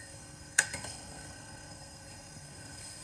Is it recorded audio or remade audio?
remade